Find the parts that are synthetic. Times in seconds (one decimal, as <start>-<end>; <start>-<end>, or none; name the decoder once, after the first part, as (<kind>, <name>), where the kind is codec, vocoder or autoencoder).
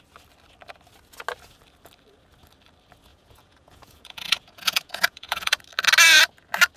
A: 3.1-5.6 (vocoder, Vocos)